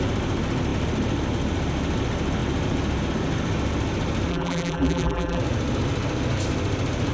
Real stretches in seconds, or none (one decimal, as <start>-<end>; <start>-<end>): 0.0-4.3; 5.4-7.1